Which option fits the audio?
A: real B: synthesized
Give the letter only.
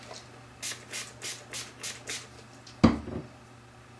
A